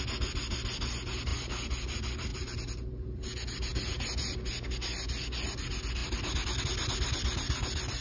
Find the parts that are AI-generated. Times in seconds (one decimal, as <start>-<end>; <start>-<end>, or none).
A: 2.3-2.9